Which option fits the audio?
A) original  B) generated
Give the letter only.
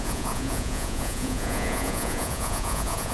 B